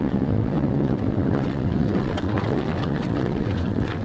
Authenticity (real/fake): fake